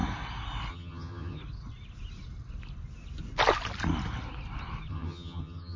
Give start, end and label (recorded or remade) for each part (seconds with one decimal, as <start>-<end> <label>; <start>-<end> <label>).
0.0-0.7 recorded; 0.7-1.4 remade; 1.4-4.9 recorded; 4.9-5.8 remade